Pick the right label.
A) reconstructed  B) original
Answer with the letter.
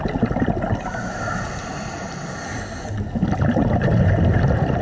B